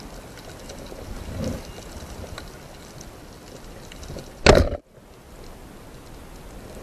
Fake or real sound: real